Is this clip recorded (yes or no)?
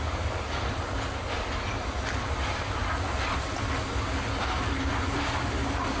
yes